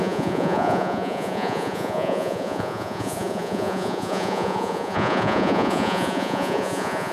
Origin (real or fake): fake